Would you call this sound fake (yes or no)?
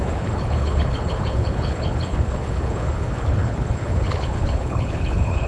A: yes